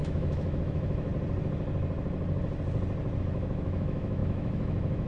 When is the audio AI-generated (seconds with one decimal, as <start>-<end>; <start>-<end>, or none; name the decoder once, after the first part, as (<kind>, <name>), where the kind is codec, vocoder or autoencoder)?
0.0-1.1 (autoencoder, DAC-VAE); 3.2-5.1